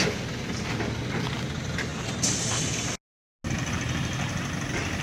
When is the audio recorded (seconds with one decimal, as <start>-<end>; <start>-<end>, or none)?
0.0-5.0